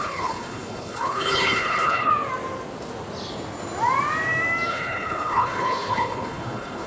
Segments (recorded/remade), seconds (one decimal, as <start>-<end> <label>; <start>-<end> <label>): 0.0-2.1 remade; 2.1-4.7 recorded; 4.7-6.9 remade